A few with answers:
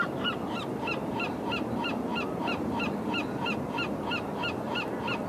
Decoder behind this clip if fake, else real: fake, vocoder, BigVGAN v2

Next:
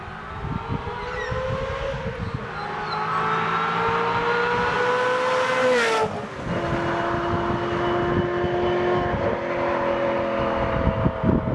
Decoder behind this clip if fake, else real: real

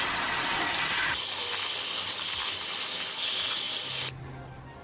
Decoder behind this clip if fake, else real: real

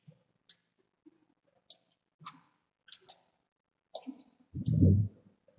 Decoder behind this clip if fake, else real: real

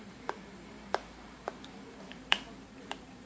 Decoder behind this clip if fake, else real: fake, vocoder, BigVGAN v2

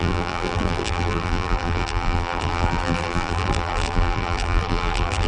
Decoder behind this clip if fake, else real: fake, vocoder, BigVGAN v2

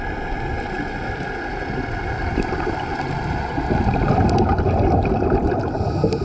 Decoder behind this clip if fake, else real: real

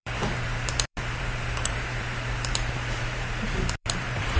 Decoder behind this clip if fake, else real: fake, vocoder, BigVGAN v2